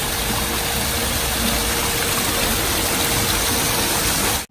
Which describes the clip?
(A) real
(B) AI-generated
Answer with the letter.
A